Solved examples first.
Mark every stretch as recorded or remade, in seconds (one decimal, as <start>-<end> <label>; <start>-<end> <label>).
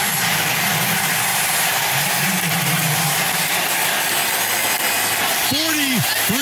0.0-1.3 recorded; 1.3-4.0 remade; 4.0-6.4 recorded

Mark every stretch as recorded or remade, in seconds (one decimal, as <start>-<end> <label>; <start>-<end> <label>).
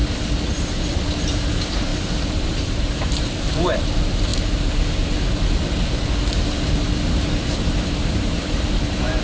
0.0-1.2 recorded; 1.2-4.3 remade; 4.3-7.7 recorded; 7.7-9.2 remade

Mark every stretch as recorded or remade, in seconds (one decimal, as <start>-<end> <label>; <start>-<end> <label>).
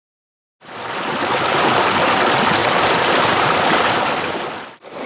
0.0-2.6 recorded; 2.6-3.8 remade; 3.8-5.1 recorded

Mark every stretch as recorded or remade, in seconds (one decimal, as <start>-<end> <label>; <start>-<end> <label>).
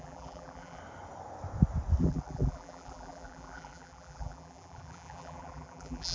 0.0-0.8 remade; 0.8-2.0 recorded; 2.0-6.1 remade